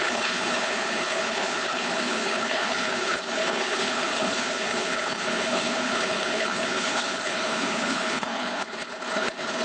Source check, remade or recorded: remade